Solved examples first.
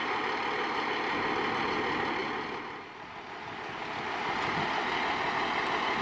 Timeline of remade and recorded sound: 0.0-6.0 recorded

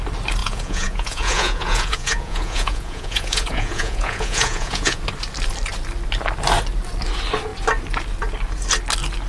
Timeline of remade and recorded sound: 0.0-0.4 recorded; 0.4-5.0 remade; 5.0-9.3 recorded

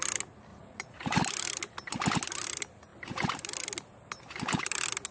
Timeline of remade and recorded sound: 0.0-0.5 recorded; 0.5-1.2 remade; 1.2-5.1 recorded